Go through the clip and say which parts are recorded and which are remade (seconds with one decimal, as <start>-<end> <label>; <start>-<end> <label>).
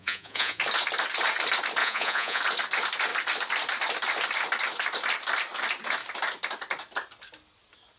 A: 0.0-0.6 remade; 0.6-1.8 recorded; 1.8-2.4 remade; 2.4-8.0 recorded